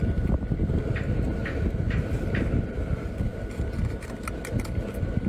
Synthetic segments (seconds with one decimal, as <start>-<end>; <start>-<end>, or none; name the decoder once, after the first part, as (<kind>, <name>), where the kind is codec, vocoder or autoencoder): none